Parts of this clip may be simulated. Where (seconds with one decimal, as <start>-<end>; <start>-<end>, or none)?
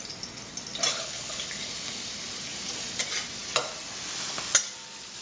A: 0.9-1.7